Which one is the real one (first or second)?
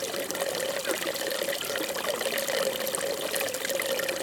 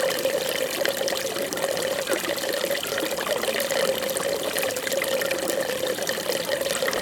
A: first